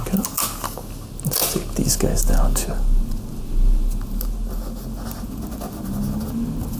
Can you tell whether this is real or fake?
real